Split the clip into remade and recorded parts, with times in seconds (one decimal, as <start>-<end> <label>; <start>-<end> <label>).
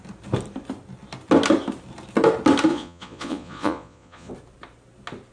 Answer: 0.0-2.7 recorded; 2.7-4.3 remade; 4.3-5.3 recorded